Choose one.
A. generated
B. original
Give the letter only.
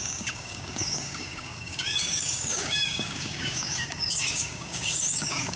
A